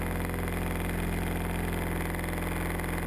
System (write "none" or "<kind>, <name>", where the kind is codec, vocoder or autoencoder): none